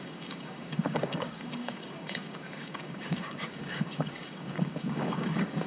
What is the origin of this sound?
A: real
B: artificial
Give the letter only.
B